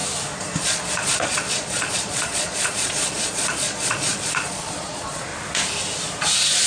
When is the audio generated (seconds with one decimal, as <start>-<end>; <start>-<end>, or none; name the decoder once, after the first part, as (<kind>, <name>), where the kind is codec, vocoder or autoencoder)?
0.6-5.3 (vocoder, Vocos)